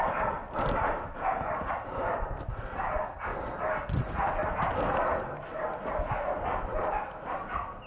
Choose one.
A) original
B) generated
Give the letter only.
A